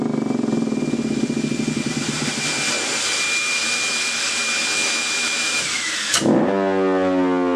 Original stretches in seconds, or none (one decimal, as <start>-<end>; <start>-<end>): 0.0-3.6; 6.1-7.6